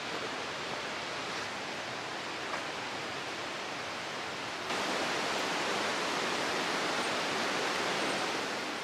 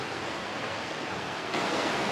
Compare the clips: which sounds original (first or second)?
first